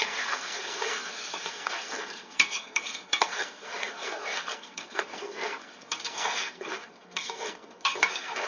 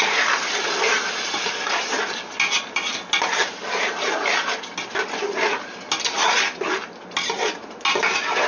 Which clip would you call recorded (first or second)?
second